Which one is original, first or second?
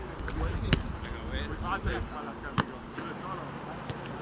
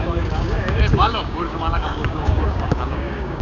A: first